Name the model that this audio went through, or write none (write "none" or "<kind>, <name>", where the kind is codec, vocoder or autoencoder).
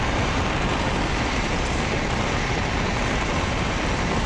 none